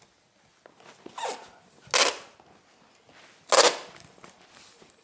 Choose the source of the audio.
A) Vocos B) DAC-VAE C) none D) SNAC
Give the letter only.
C